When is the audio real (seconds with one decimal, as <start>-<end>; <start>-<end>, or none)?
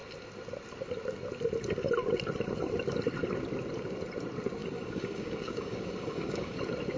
0.0-4.6; 6.6-7.0